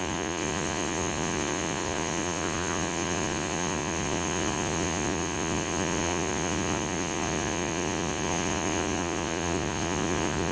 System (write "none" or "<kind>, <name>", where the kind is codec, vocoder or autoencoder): vocoder, Vocos